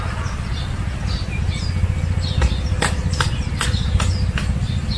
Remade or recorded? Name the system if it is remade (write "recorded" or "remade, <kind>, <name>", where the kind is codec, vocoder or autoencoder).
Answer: recorded